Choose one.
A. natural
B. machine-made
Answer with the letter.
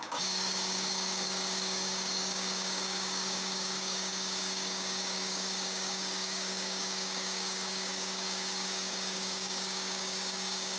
B